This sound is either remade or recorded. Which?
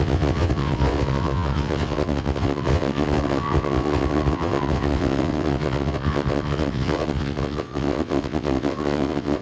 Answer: remade